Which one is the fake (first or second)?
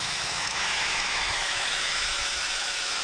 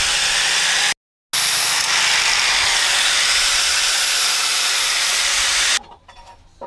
first